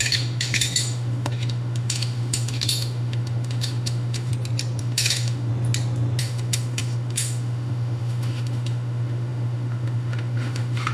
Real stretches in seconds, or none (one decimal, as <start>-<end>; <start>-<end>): 4.3-4.8; 5.5-6.2